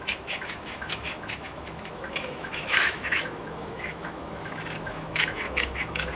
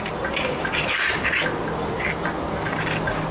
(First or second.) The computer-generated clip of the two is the first